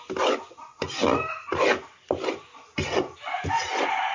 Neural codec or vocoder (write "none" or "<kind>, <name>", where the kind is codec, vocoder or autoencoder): none